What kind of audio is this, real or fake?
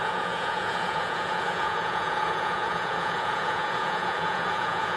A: fake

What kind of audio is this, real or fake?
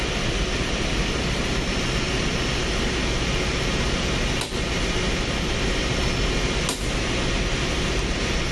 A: real